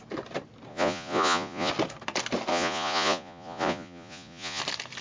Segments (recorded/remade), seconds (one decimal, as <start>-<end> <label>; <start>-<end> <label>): 0.0-0.7 recorded; 0.7-1.7 remade; 1.7-2.5 recorded; 2.5-4.6 remade; 4.6-5.0 recorded